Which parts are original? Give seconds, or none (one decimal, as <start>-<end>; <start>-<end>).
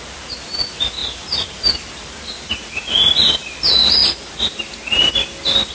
0.0-5.7